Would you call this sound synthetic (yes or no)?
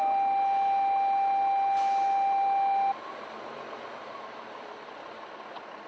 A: no